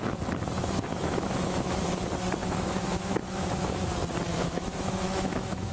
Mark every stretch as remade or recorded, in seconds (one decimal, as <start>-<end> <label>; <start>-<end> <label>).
0.0-0.9 recorded; 0.9-1.8 remade; 1.8-2.4 recorded; 2.4-3.9 remade; 3.9-4.3 recorded; 4.3-5.7 remade